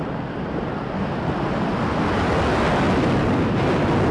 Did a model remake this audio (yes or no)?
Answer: no